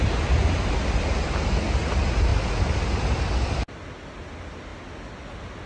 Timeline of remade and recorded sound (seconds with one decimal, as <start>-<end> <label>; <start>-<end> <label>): 0.0-5.7 recorded